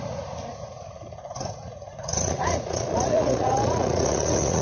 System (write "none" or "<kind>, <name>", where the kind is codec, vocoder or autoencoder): vocoder, Vocos